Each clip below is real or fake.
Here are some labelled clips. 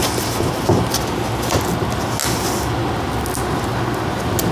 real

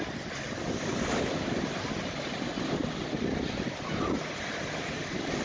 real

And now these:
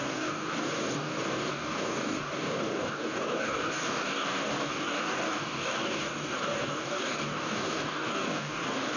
fake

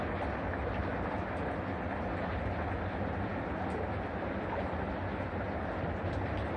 real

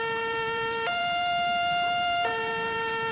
fake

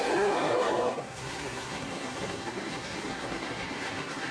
fake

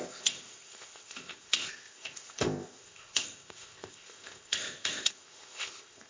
fake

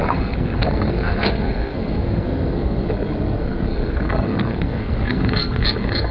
fake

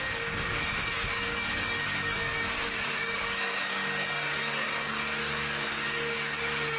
fake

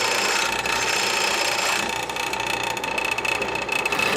real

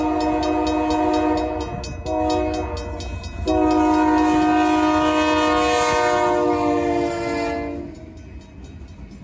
real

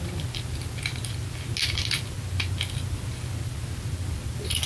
real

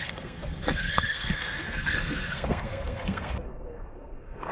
fake